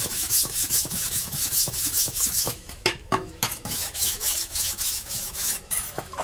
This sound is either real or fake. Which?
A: fake